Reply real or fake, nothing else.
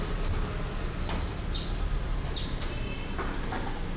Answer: real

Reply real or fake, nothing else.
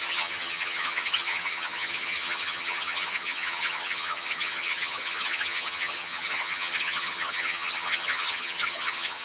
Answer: fake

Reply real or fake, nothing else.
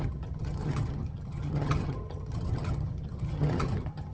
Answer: fake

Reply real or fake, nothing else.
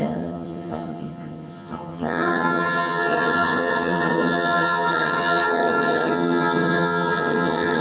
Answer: fake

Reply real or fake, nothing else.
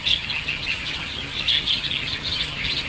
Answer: fake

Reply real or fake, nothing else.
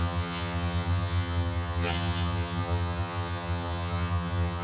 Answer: fake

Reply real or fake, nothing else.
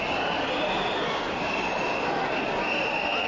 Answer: real